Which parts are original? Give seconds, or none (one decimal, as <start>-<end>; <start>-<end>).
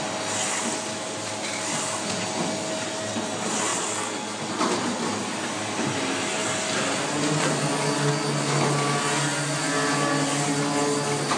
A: 0.0-11.4